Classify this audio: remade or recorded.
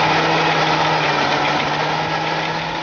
recorded